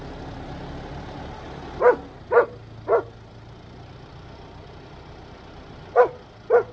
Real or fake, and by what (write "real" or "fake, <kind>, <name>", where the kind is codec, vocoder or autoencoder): real